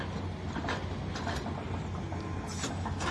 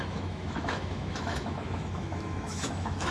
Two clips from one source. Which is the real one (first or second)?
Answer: first